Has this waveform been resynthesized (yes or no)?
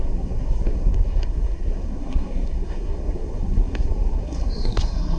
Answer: yes